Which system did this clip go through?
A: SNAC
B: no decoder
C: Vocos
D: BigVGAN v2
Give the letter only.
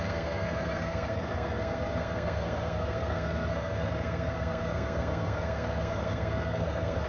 A